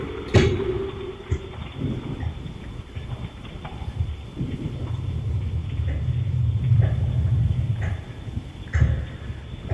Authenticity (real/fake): real